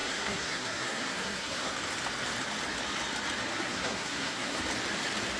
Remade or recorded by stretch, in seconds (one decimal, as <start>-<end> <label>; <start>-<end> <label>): 0.0-1.7 remade; 1.7-3.5 recorded; 3.5-4.6 remade; 4.6-5.4 recorded